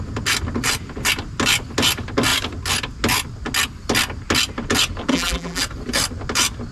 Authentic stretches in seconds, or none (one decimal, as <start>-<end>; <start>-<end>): 0.0-5.1; 5.6-6.7

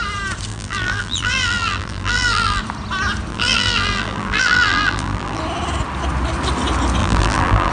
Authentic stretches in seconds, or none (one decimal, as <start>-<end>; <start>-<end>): 0.0-0.5; 2.6-3.3; 5.4-7.0

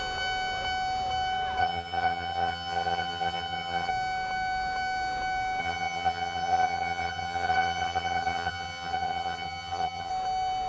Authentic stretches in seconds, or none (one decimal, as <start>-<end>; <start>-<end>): 0.0-1.6; 3.9-5.6; 10.1-10.7

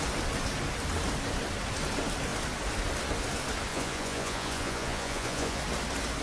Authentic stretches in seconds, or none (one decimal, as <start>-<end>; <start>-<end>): 0.0-3.7; 5.6-6.2